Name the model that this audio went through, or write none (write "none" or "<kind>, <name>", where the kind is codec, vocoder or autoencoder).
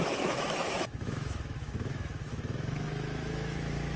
autoencoder, DAC-VAE